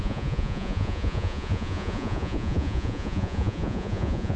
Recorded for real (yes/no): no